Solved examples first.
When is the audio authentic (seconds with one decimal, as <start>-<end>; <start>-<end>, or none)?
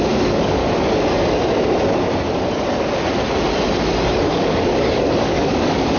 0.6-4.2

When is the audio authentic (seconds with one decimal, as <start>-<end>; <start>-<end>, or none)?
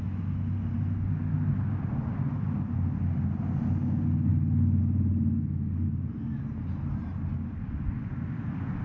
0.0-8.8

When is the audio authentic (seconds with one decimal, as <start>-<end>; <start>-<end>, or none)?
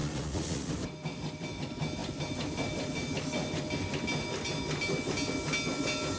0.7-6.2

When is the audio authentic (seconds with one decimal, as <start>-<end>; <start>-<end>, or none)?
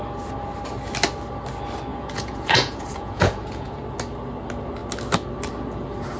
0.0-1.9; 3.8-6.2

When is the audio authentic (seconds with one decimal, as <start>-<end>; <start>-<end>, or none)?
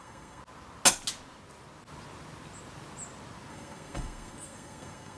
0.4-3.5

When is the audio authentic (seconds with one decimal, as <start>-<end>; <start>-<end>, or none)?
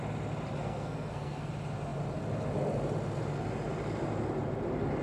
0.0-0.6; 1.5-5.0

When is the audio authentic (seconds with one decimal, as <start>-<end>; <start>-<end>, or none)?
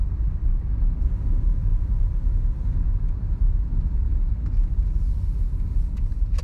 0.5-1.0; 4.1-5.7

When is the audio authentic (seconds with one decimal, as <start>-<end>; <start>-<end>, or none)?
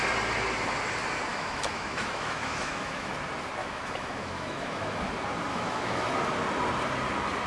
0.0-1.3; 3.1-3.6; 5.1-5.5; 6.1-7.5